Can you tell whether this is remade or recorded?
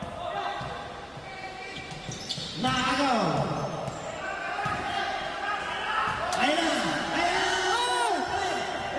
recorded